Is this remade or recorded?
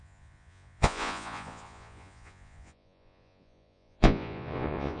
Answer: remade